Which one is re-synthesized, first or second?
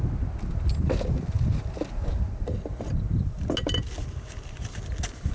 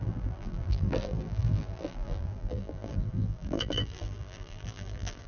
second